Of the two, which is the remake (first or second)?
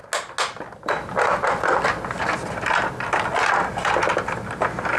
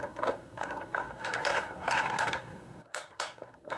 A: second